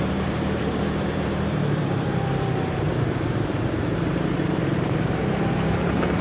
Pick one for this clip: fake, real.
fake